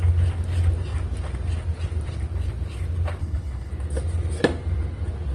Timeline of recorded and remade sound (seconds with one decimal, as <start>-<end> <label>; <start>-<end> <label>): 0.0-3.2 recorded; 3.2-3.7 remade; 3.7-5.3 recorded